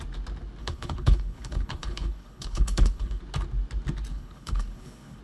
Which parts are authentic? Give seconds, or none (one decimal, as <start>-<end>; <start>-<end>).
0.0-0.6; 3.2-4.1